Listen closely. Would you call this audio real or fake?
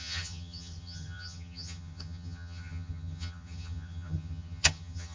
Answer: fake